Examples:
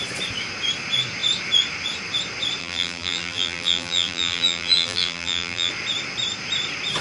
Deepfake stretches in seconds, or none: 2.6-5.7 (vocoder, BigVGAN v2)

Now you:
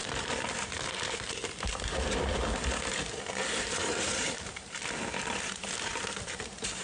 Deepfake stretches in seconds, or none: 1.3-6.8 (vocoder, BigVGAN v2)

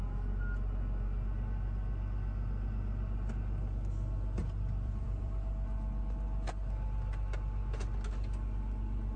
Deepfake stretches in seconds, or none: 4.4-6.5 (vocoder, BigVGAN v2)

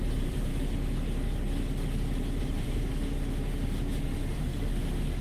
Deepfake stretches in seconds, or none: 0.0-0.5 (vocoder, BigVGAN v2); 2.4-2.9; 4.0-4.5

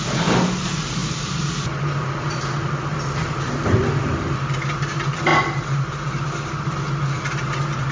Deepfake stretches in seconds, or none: none